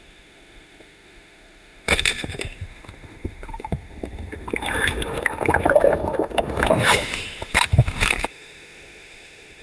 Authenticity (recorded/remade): remade